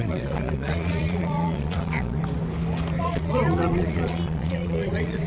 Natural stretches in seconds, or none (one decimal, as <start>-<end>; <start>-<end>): 2.2-3.0